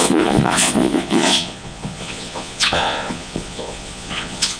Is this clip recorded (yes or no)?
no